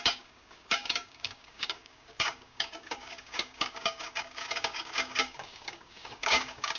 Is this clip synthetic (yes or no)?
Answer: yes